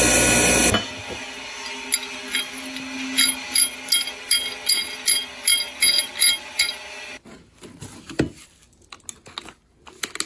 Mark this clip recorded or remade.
recorded